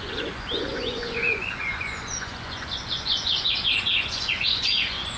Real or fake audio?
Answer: fake